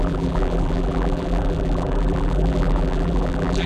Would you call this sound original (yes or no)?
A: no